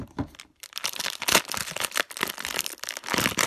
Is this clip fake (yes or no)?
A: yes